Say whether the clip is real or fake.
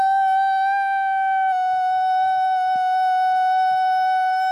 fake